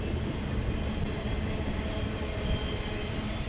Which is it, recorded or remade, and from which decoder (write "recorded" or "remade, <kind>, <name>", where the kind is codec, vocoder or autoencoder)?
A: recorded